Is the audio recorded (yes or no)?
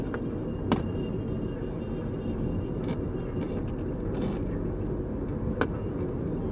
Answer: yes